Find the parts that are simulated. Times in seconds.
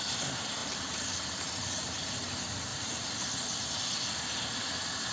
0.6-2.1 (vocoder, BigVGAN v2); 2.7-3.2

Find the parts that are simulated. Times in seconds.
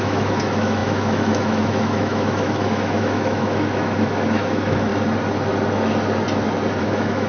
0.0-4.9 (autoencoder, DAC-VAE); 6.8-7.3